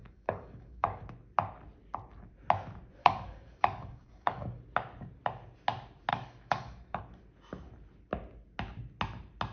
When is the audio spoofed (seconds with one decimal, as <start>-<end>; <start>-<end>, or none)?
0.0-1.0; 3.0-4.6; 6.1-7.0